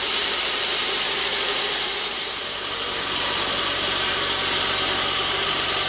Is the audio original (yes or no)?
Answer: no